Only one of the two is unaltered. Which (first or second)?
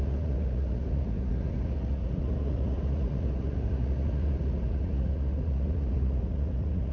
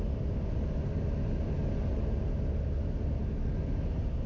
second